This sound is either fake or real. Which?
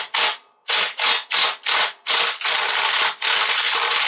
real